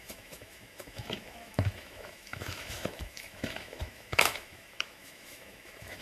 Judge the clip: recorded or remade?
remade